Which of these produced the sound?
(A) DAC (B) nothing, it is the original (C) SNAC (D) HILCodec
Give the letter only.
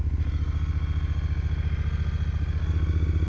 B